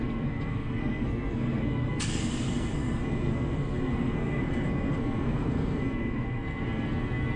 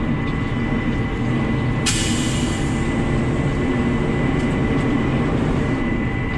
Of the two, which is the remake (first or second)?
first